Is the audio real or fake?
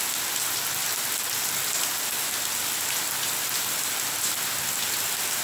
real